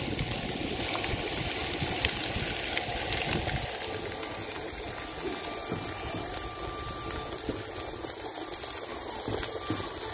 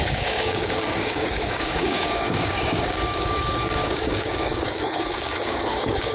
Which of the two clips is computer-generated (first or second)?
second